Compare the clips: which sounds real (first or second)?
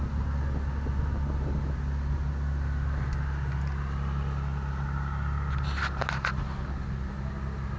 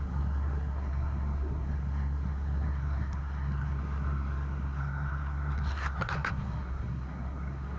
first